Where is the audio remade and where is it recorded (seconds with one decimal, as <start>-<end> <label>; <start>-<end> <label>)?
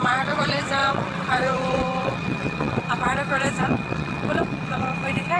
0.0-5.4 remade